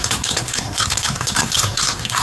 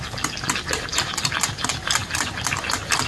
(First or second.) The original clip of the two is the second